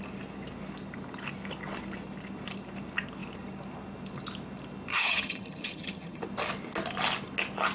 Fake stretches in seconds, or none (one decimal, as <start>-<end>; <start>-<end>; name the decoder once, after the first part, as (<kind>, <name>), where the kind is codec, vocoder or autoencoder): 4.9-6.2 (vocoder, HiFi-GAN)